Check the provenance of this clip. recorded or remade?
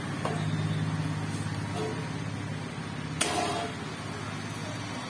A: recorded